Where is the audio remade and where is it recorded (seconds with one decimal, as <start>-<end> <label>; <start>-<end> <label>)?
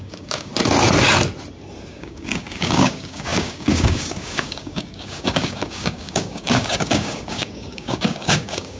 0.0-0.5 remade; 0.5-1.9 recorded; 1.9-8.8 remade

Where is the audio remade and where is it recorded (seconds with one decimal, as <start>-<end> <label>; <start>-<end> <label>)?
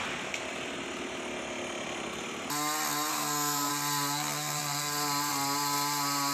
0.0-3.1 recorded; 3.1-3.7 remade; 3.7-6.3 recorded